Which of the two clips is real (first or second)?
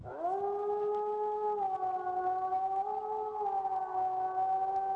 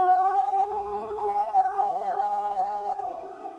first